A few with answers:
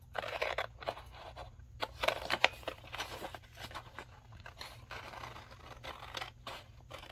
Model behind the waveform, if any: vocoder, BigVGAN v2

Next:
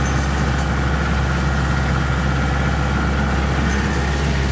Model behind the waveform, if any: none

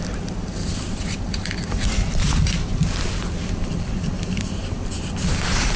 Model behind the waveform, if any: vocoder, BigVGAN v2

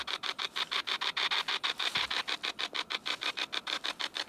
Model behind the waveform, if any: none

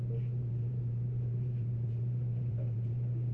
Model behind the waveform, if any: vocoder, BigVGAN v2